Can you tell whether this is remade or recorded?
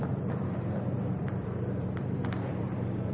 remade